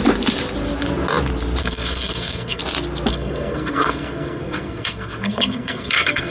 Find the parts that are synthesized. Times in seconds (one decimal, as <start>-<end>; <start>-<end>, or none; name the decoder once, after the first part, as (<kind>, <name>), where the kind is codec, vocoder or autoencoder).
1.6-2.6 (codec, SNAC); 3.1-6.3